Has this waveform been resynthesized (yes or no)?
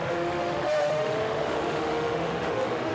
yes